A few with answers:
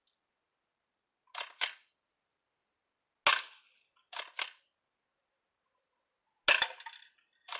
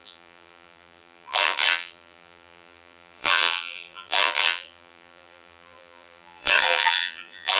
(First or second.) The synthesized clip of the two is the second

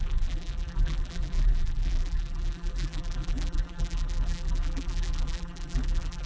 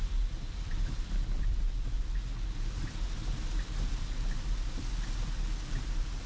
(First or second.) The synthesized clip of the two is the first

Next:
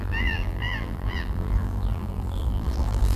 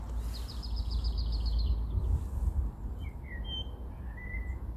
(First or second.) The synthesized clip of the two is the first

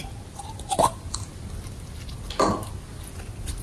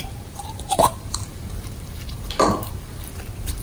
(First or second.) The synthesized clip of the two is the second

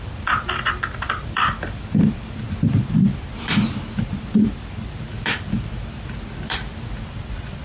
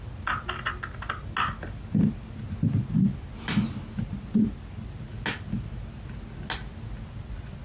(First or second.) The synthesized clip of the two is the first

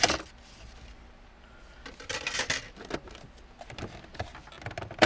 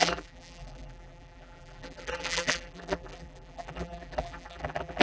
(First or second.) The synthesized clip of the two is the second